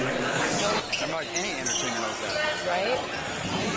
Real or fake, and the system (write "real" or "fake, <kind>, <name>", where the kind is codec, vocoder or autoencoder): real